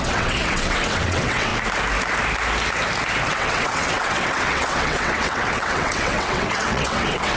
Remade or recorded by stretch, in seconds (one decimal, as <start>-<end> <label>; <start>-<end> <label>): 0.0-1.5 remade; 1.5-3.3 recorded; 3.3-7.4 remade